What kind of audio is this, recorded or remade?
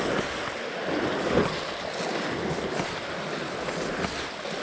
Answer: recorded